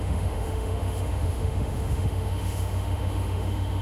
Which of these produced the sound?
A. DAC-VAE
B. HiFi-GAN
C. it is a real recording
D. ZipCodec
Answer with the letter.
A